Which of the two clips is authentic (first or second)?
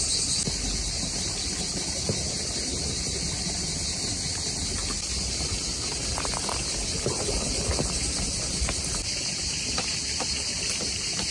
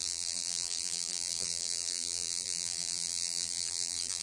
first